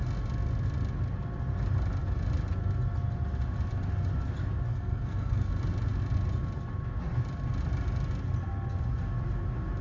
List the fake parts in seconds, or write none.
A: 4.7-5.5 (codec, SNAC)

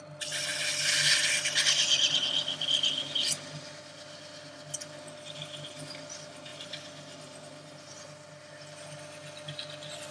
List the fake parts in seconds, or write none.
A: none

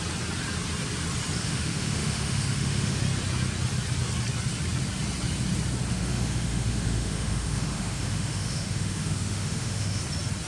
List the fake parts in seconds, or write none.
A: 1.4-3.0 (autoencoder, DAC-VAE); 5.9-10.0